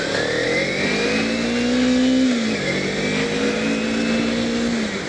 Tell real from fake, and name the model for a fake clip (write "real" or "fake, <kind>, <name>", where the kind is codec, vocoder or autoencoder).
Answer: real